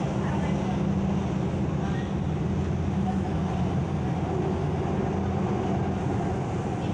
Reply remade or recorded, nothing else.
recorded